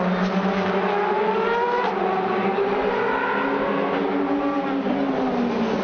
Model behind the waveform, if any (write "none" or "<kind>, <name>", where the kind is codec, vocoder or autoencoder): none